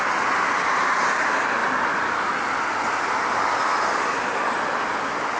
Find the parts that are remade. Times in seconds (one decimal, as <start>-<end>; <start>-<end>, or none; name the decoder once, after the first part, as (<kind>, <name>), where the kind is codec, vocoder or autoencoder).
none